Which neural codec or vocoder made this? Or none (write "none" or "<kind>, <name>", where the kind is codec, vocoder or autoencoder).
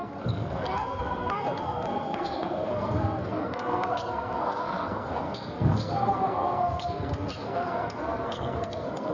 codec, SNAC